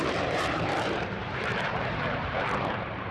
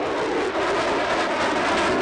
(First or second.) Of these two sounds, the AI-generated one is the first